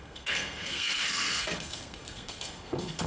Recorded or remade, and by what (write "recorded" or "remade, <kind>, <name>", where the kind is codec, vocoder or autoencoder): remade, codec, SNAC